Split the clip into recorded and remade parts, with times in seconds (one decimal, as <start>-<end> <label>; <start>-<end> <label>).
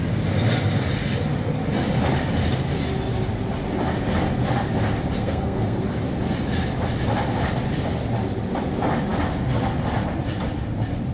0.0-5.2 recorded; 5.2-5.8 remade; 5.8-11.1 recorded